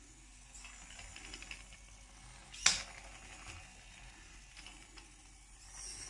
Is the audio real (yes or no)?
yes